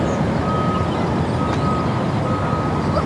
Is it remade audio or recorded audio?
recorded